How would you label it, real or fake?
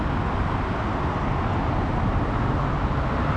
real